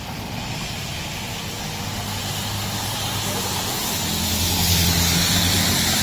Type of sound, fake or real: real